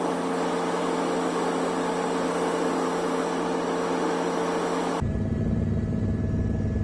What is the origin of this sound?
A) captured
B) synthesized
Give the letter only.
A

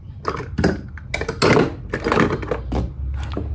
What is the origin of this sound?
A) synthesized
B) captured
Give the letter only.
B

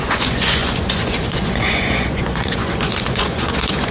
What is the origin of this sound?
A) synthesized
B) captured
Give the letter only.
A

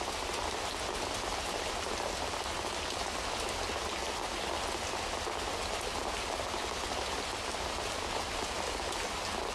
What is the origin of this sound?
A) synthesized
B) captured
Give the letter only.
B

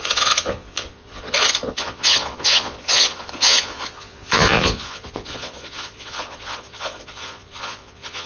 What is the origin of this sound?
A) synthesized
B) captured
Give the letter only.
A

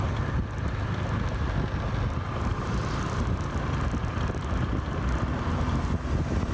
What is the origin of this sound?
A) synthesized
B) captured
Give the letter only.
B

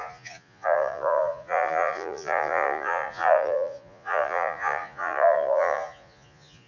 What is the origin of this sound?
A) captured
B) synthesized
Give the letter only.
B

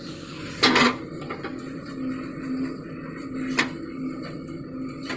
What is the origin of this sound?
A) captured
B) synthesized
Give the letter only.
A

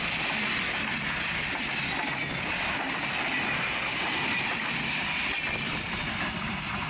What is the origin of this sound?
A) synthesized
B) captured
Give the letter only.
B